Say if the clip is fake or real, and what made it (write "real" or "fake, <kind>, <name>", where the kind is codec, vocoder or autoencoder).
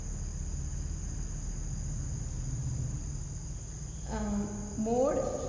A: real